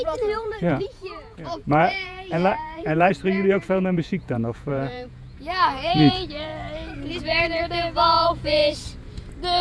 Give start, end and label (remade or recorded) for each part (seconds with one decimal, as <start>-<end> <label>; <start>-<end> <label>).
0.0-6.5 remade; 6.5-7.2 recorded; 7.2-8.6 remade; 8.6-9.6 recorded